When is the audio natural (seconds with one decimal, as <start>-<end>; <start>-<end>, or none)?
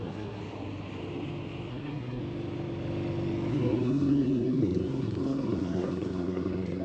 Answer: 0.4-1.7; 2.2-3.5